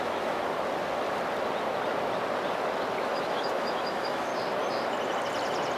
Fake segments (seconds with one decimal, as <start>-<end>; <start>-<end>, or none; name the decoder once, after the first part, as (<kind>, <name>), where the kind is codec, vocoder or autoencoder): 0.0-0.4 (autoencoder, DAC-VAE); 3.0-4.3